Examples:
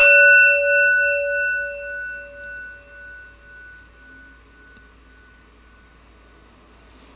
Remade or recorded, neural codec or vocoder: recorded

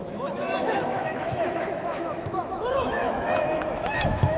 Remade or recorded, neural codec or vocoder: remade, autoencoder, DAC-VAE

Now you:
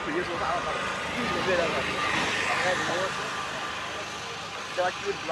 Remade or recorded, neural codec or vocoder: recorded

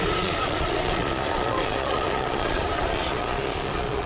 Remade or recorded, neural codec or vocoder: remade, vocoder, Vocos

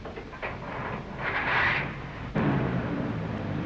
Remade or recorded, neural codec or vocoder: remade, vocoder, BigVGAN v2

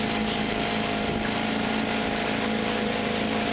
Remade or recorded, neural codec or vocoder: recorded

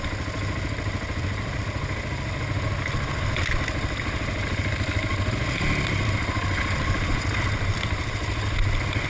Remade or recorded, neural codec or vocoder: recorded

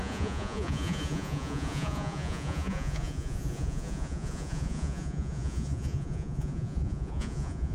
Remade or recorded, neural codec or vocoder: remade, vocoder, Vocos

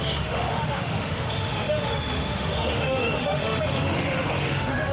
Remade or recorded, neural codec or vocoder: remade, autoencoder, DAC-VAE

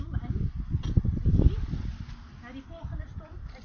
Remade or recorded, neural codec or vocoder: recorded